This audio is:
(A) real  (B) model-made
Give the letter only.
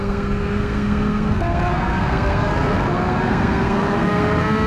B